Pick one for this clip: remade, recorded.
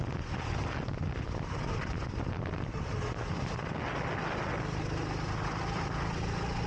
recorded